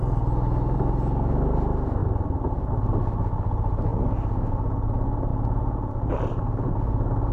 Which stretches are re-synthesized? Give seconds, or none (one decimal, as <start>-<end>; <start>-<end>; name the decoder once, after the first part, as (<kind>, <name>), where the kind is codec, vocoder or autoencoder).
5.3-6.0 (vocoder, Vocos)